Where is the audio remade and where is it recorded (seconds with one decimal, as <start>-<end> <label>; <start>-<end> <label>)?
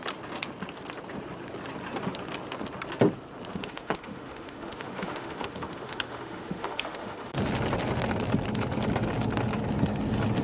0.0-3.5 recorded; 3.5-7.4 remade; 7.4-10.4 recorded